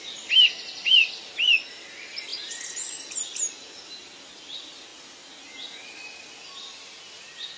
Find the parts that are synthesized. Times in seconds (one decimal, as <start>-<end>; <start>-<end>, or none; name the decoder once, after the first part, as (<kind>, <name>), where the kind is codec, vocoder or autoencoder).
none

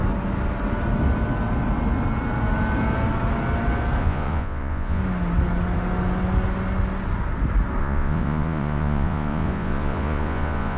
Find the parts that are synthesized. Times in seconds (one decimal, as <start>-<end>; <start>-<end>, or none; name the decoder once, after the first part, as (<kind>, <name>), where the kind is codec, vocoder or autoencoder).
4.0-5.0 (vocoder, Vocos); 7.8-10.8

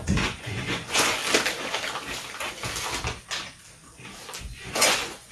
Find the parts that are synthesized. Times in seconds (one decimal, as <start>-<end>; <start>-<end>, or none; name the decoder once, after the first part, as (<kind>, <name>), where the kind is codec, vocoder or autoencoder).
0.0-1.2 (vocoder, Vocos); 4.4-5.3

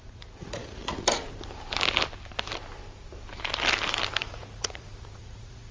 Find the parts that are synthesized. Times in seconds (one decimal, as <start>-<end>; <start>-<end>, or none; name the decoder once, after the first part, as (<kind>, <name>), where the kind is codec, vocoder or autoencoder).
0.0-0.8 (vocoder, Vocos); 4.2-5.7

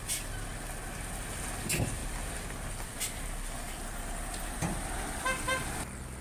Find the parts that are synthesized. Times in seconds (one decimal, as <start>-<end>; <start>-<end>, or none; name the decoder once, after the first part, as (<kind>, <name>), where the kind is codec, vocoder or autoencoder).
none

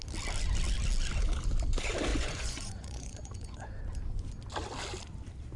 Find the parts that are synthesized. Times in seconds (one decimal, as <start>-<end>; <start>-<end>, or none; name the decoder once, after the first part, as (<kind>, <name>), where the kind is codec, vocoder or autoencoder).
2.1-3.8 (vocoder, Vocos)

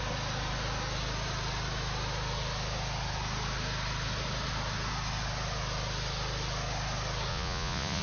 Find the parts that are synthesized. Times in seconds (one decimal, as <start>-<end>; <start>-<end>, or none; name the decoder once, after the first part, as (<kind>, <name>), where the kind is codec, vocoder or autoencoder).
7.3-8.0 (vocoder, Vocos)